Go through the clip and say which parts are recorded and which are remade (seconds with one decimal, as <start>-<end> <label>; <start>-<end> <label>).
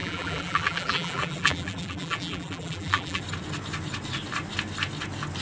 0.0-3.2 remade; 3.2-5.4 recorded